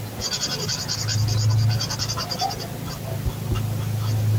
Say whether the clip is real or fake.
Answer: real